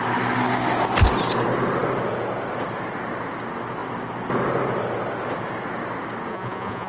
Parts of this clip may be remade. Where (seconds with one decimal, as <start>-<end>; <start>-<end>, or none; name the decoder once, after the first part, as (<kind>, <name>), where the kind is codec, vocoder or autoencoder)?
6.3-6.9 (vocoder, Vocos)